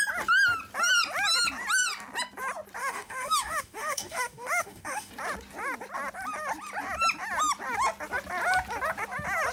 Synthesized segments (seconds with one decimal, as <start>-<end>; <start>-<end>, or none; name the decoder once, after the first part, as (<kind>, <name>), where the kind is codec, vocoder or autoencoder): 2.8-5.1 (autoencoder, DAC-VAE)